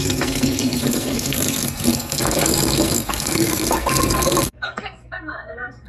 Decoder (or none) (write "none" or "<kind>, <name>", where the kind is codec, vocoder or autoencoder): codec, SNAC